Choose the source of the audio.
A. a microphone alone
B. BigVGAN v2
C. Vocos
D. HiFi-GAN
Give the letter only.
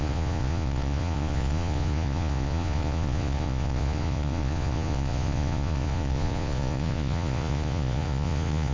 C